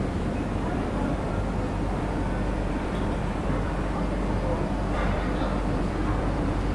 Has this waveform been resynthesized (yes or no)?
yes